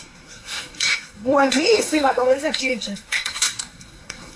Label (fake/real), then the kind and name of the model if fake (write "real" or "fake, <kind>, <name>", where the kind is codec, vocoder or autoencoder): fake, codec, SNAC